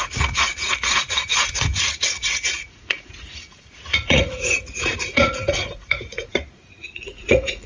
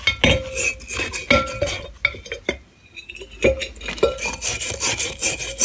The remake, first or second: first